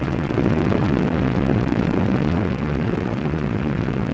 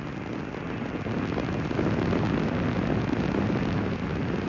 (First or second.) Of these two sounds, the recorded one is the second